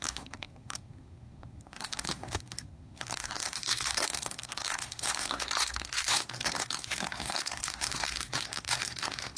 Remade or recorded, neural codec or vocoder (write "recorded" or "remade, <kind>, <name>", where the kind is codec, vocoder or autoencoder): remade, codec, SNAC